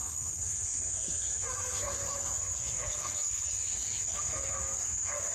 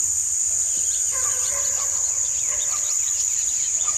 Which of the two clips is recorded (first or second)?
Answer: second